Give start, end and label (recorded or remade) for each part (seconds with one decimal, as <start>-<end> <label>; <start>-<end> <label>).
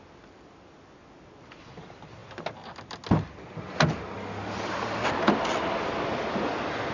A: 0.0-6.9 recorded